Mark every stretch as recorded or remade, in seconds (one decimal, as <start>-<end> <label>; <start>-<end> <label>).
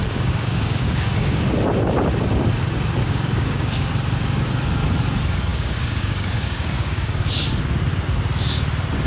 0.0-1.4 remade; 1.4-3.0 recorded; 3.0-3.9 remade; 3.9-5.5 recorded; 5.5-7.3 remade; 7.3-9.1 recorded